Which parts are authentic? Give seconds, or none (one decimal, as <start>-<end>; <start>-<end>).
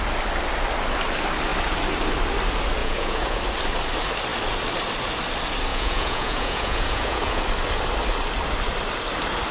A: 0.0-2.8; 3.4-5.7; 7.4-9.5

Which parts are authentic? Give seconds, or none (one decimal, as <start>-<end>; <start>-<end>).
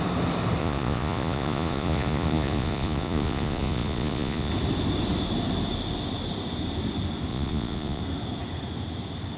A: 0.0-0.6; 4.5-7.3; 8.0-9.4